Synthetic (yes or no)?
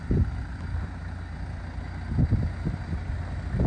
no